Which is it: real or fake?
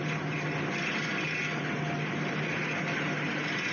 real